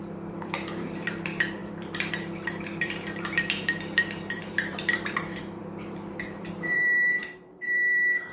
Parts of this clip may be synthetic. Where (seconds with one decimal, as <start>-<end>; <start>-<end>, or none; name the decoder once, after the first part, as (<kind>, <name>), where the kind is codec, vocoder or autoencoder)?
0.0-8.3 (vocoder, BigVGAN v2)